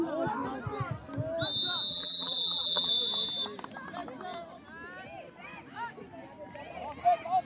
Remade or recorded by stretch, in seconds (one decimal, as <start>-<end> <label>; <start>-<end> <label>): 0.0-1.9 recorded; 1.9-2.9 remade; 2.9-7.4 recorded